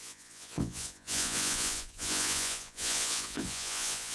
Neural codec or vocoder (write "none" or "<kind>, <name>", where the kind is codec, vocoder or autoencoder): vocoder, Vocos